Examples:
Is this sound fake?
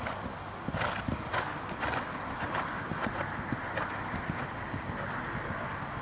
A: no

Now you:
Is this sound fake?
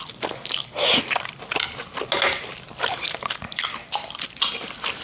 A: no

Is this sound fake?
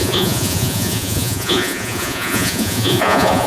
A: yes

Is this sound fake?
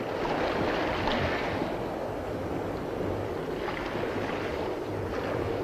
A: no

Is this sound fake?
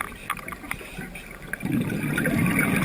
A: no